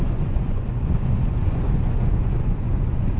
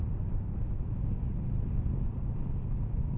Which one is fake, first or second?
first